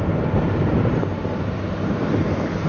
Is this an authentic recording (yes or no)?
no